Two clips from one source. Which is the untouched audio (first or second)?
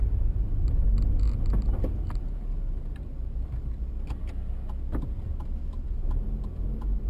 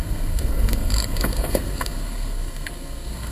first